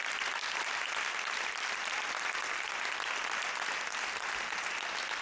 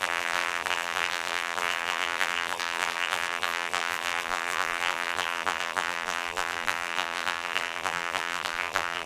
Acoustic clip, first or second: first